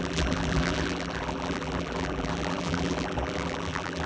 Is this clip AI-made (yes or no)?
yes